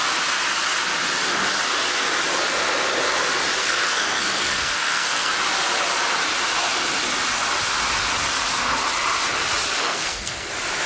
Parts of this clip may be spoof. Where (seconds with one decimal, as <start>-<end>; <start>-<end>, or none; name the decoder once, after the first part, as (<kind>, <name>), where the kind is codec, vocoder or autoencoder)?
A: 3.6-5.3 (codec, SNAC); 9.8-10.5

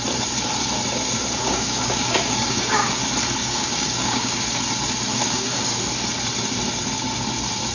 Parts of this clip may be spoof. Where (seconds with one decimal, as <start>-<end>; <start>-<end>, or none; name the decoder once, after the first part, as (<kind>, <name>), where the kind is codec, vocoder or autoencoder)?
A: 1.4-3.0 (codec, DAC); 3.4-4.4; 5.1-5.8

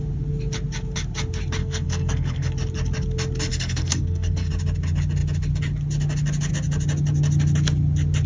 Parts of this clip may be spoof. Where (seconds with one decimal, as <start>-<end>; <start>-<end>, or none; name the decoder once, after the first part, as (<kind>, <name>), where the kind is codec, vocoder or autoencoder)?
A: 1.6-2.5 (codec, SNAC); 3.5-4.5

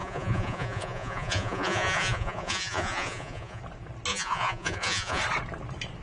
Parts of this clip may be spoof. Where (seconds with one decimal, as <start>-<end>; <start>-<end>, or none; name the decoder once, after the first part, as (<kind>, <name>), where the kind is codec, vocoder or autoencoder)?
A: 0.0-3.6 (vocoder, Vocos); 4.1-5.2

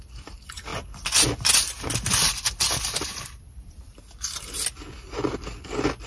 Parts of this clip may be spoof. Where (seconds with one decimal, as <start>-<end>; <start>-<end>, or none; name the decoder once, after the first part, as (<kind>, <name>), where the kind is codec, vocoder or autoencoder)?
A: 0.0-0.7 (vocoder, BigVGAN v2); 2.8-3.9